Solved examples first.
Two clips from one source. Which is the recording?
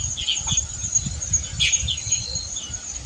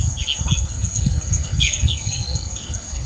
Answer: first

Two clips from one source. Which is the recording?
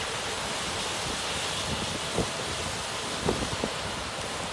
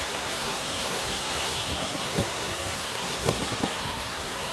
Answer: first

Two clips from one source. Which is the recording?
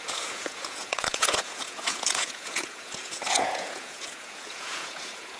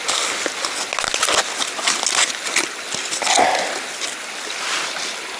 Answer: second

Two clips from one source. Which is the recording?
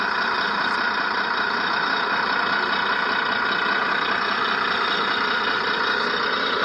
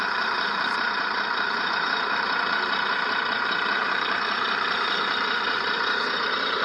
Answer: first